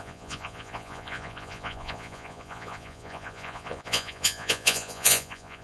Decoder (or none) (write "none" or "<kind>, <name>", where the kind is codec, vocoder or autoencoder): vocoder, Vocos